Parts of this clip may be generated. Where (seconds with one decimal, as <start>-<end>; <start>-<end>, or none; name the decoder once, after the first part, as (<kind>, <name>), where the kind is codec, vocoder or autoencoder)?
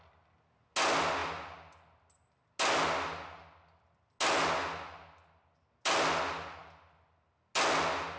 none